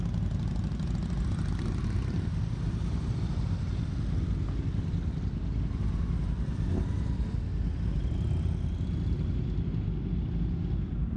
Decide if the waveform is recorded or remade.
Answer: recorded